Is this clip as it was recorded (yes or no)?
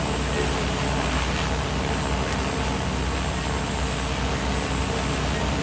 yes